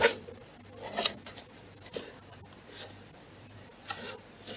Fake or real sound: fake